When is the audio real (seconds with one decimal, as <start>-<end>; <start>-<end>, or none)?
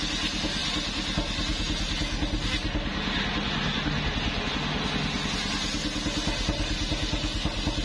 0.0-7.8